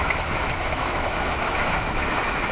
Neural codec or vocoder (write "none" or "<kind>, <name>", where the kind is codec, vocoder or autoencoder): autoencoder, DAC-VAE